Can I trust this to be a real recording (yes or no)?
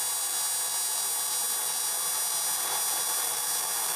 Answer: yes